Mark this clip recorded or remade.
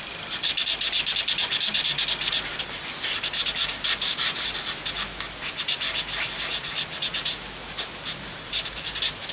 recorded